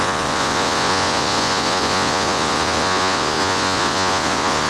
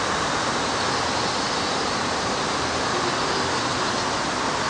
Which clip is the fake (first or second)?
first